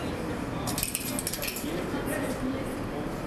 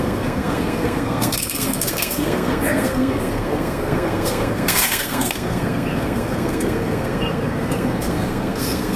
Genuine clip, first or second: first